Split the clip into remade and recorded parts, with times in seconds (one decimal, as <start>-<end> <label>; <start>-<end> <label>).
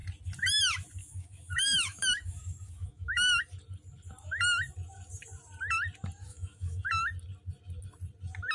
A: 0.0-1.0 recorded; 1.0-3.4 remade; 3.4-6.3 recorded; 6.3-6.9 remade; 6.9-8.5 recorded